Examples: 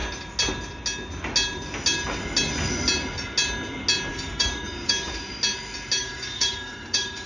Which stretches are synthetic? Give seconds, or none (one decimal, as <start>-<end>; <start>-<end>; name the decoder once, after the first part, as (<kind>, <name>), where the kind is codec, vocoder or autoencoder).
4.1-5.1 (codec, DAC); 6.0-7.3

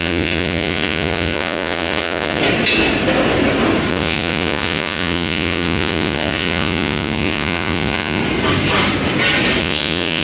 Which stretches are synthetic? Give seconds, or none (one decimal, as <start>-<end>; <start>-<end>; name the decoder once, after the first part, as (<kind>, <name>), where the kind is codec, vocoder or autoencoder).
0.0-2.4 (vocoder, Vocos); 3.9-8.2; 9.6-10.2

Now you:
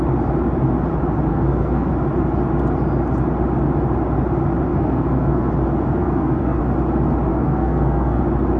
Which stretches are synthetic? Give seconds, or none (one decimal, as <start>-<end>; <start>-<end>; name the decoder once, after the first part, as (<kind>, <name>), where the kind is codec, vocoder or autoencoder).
1.3-1.9 (codec, SNAC); 4.7-5.5; 6.0-6.6; 7.3-8.2

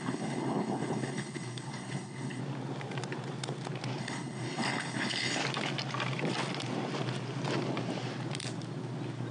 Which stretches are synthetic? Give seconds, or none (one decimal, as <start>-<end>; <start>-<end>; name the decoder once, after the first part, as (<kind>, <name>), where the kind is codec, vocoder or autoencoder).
0.0-2.4 (codec, HILCodec); 4.0-5.4

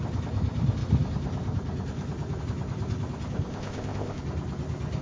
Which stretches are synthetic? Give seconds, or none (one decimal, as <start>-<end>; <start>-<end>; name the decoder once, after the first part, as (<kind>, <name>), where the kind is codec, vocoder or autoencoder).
3.5-4.2 (codec, ZipCodec)

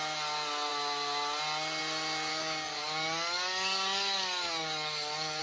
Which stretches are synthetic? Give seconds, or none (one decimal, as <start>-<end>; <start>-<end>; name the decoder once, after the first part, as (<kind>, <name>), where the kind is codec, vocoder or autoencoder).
2.3-5.4 (codec, DAC)